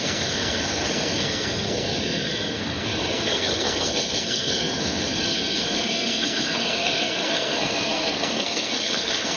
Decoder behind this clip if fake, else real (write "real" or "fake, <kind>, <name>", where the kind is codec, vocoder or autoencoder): fake, codec, SNAC